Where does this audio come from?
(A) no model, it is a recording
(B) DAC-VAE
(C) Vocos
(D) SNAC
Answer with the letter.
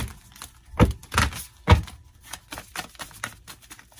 A